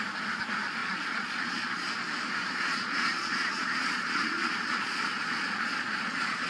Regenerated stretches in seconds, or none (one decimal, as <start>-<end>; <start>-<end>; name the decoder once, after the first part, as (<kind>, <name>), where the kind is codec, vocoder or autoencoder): 0.8-1.9 (vocoder, Vocos); 2.4-6.5